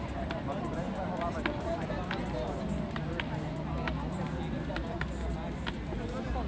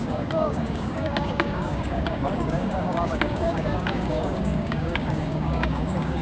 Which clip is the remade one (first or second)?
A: second